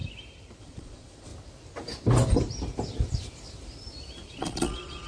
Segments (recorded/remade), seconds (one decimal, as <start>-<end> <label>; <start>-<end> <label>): 0.0-0.6 recorded; 0.6-1.3 remade; 1.3-4.4 recorded; 4.4-5.1 remade